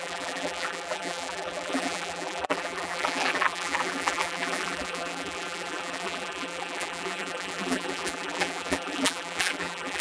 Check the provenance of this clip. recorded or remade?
remade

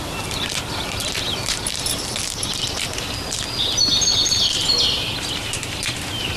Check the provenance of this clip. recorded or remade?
recorded